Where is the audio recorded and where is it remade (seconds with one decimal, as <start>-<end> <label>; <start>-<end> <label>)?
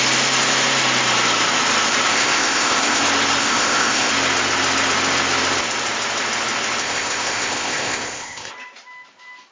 0.0-2.1 recorded; 2.1-3.0 remade; 3.0-3.4 recorded; 3.4-4.1 remade; 4.1-6.8 recorded; 6.8-8.5 remade; 8.5-9.5 recorded